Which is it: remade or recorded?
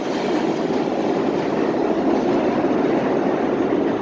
recorded